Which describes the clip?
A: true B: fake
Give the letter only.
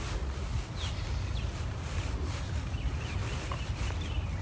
A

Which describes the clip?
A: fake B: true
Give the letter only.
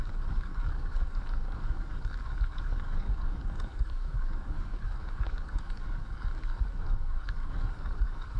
A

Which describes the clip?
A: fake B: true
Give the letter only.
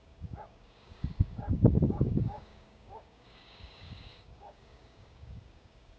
A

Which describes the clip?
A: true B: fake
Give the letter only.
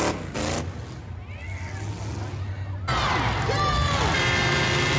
A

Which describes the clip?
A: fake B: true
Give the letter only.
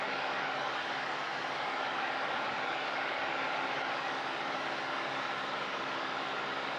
A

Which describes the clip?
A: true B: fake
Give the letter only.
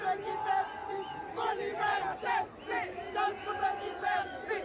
A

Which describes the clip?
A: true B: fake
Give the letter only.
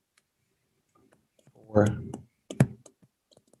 A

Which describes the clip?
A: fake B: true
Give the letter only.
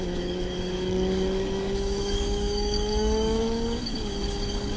A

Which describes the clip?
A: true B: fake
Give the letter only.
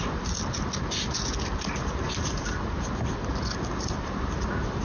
A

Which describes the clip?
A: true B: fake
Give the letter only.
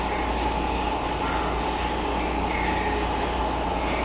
A